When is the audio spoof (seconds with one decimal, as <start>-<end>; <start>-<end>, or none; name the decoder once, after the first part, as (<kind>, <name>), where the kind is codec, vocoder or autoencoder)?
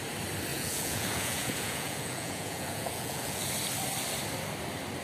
0.5-3.5 (vocoder, Vocos)